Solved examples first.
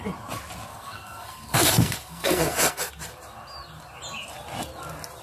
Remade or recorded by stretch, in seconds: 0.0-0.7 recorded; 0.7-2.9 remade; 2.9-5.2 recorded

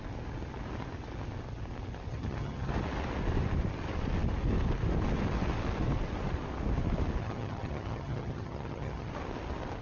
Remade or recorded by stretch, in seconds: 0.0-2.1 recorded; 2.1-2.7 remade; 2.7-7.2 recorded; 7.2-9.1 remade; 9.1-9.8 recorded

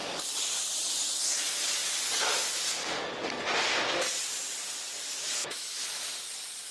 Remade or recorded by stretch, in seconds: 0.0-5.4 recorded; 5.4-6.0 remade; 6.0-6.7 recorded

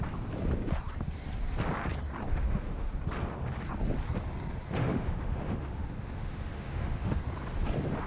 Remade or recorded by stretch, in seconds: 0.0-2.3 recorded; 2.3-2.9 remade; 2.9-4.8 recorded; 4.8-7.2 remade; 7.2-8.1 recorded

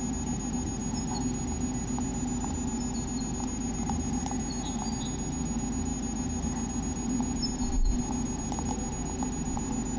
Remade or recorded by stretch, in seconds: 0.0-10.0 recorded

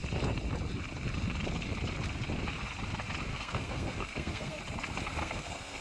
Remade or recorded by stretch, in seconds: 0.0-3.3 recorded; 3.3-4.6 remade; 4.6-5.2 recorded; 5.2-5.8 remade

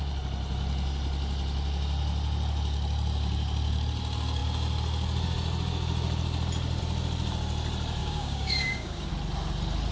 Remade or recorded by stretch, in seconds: 0.0-8.0 recorded; 8.0-9.1 remade; 9.1-9.9 recorded